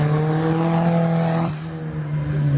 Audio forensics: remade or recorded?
recorded